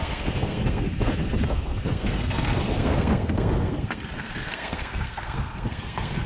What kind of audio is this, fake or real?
fake